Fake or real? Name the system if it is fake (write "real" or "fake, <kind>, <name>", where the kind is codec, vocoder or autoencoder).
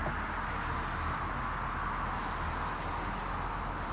real